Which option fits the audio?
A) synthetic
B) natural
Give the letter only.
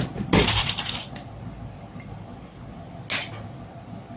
B